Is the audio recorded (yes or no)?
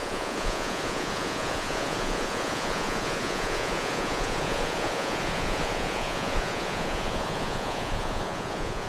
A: no